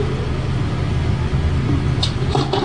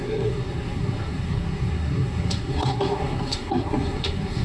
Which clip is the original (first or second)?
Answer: first